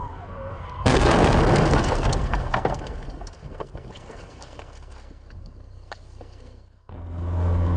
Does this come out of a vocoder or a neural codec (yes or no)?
yes